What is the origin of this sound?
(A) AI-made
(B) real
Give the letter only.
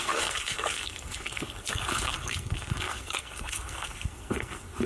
A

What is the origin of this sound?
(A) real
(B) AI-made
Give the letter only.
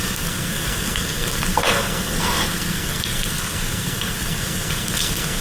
B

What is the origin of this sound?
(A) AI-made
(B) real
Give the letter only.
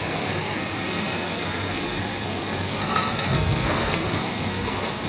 A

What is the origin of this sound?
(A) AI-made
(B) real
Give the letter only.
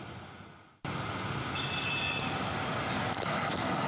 B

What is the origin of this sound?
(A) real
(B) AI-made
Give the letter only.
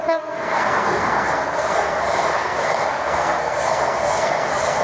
B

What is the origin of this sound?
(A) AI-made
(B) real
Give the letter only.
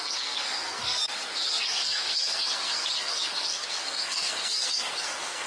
A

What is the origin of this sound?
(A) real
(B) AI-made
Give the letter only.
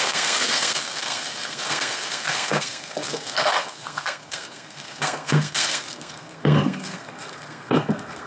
B